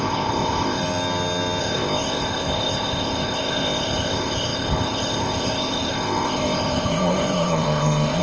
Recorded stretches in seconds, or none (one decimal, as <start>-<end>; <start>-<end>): 0.8-1.6